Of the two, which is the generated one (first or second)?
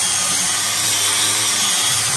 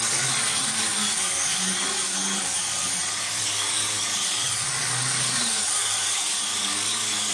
second